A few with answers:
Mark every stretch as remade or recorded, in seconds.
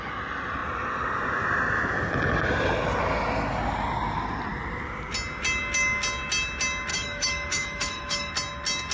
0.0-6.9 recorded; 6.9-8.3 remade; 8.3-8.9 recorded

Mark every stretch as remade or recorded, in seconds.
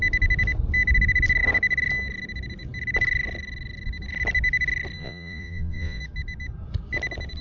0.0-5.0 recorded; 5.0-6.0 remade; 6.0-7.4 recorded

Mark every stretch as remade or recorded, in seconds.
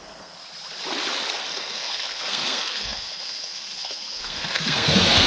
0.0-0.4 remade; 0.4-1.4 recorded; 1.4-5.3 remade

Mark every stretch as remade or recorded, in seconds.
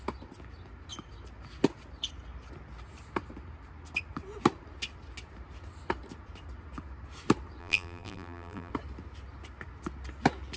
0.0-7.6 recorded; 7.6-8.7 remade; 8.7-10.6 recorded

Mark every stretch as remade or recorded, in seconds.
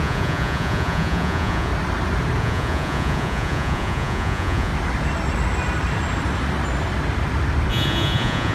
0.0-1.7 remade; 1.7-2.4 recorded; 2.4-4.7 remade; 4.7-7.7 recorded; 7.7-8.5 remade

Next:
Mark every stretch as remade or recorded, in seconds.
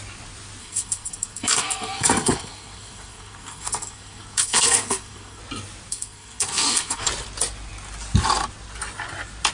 0.0-0.6 recorded; 0.6-5.4 remade; 5.4-5.9 recorded; 5.9-7.1 remade; 7.1-9.5 recorded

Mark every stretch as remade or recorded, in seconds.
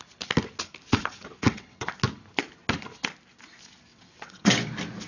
0.0-0.9 recorded; 0.9-1.9 remade; 1.9-3.9 recorded; 3.9-4.5 remade; 4.5-5.1 recorded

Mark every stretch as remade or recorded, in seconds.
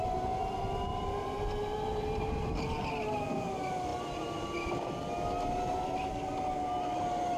0.0-0.9 recorded; 0.9-2.9 remade; 2.9-7.4 recorded